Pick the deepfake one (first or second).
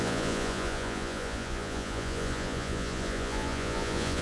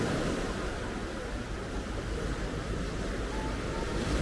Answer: first